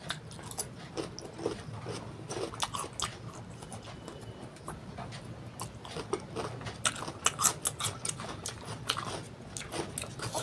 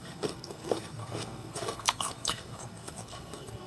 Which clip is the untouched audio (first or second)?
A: first